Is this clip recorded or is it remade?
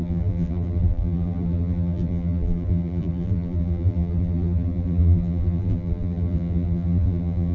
remade